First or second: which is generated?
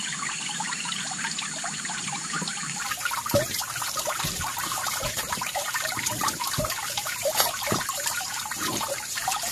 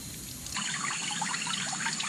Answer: first